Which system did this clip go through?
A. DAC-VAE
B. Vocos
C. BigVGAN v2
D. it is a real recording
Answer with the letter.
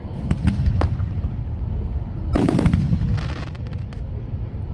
D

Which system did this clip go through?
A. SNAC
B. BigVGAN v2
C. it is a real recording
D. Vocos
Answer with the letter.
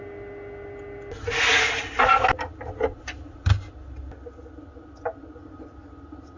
C